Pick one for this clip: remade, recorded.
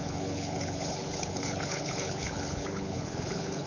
remade